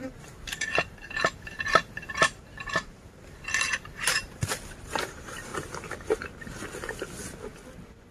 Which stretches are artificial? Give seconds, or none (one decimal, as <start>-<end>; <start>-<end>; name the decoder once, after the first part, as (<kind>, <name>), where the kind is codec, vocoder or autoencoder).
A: 0.0-5.5 (vocoder, BigVGAN v2)